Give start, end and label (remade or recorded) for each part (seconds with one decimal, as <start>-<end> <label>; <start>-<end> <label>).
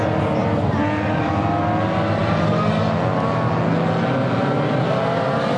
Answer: 0.0-5.6 recorded